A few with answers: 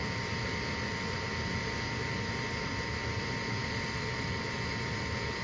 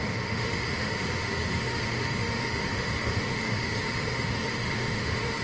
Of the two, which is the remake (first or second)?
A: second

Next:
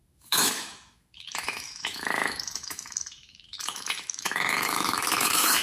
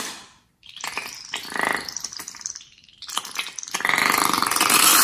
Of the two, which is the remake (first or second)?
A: first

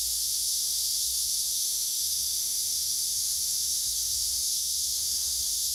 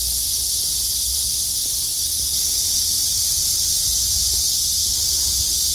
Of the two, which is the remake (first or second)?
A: first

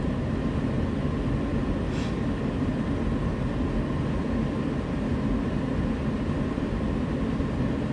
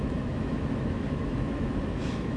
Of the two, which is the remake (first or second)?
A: second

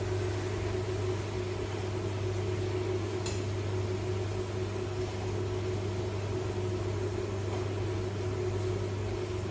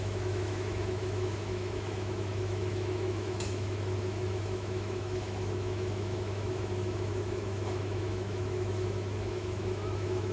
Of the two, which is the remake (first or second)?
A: second